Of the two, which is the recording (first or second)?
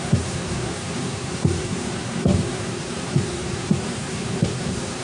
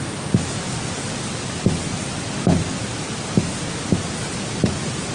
second